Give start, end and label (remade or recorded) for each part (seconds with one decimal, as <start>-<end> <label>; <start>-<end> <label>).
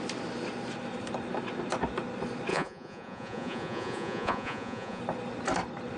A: 0.0-2.5 recorded; 2.5-5.0 remade; 5.0-6.0 recorded